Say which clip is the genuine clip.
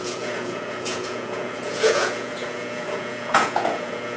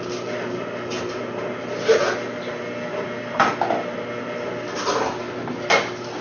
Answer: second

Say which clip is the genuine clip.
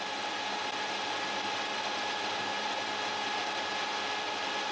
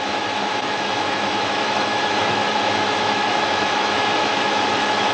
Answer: first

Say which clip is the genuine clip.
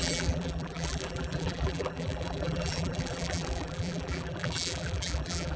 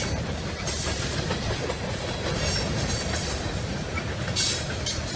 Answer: second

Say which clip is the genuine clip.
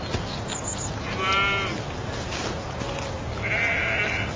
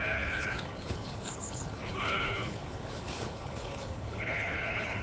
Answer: first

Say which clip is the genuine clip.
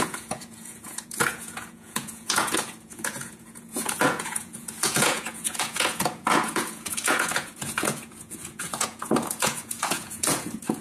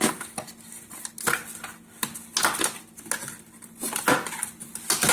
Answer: second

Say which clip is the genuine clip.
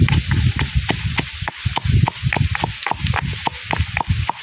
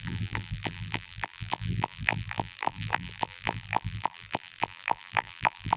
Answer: first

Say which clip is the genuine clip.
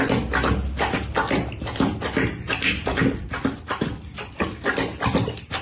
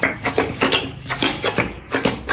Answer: first